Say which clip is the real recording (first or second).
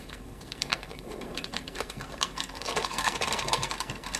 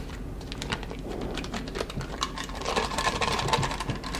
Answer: second